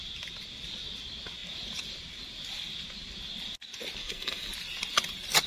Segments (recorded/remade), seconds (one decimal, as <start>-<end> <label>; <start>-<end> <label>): 0.0-4.0 recorded; 4.0-4.5 remade; 4.5-5.5 recorded